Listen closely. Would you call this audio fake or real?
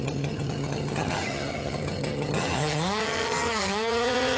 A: fake